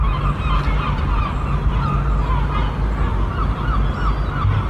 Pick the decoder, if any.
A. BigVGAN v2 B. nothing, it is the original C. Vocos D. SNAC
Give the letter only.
B